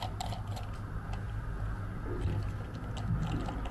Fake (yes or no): no